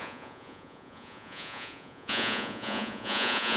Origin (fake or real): fake